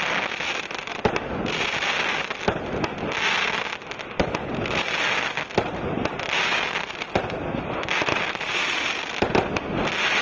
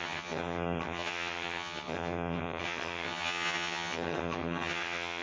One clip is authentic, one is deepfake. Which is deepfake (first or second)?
second